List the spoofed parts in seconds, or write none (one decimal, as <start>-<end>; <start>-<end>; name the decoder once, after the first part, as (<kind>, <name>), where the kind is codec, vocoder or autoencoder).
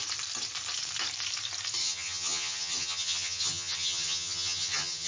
1.8-5.1 (vocoder, HiFi-GAN)